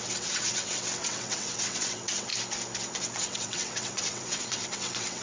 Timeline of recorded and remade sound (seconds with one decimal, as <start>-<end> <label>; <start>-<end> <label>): 0.0-2.3 remade; 2.3-2.9 recorded; 2.9-5.2 remade